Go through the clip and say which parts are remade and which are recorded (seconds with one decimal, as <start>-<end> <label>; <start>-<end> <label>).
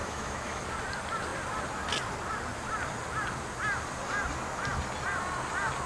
0.0-0.6 remade; 0.6-5.9 recorded